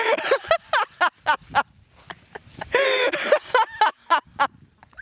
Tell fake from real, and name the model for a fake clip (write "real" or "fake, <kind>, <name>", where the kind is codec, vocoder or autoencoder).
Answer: real